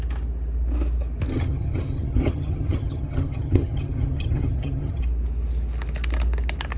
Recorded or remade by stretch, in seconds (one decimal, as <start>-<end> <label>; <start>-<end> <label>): 0.0-1.3 recorded; 1.3-5.0 remade; 5.0-6.8 recorded